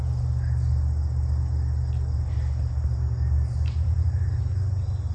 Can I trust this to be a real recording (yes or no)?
yes